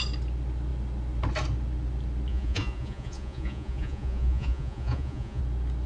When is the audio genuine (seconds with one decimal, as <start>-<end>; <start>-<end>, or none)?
0.0-2.3; 5.4-5.9